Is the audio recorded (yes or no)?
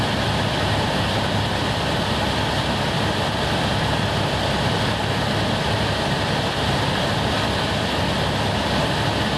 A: yes